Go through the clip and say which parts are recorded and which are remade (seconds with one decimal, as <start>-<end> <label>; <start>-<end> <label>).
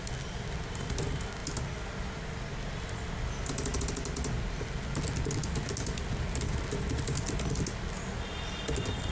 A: 0.0-9.1 recorded